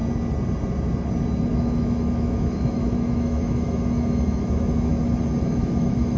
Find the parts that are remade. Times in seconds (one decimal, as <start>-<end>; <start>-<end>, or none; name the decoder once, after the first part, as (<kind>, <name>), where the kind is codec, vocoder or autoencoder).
1.5-4.9 (autoencoder, DAC-VAE); 5.4-6.2